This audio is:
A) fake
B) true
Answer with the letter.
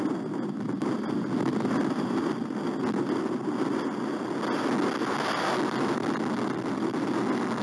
B